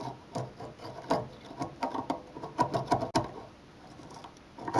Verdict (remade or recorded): recorded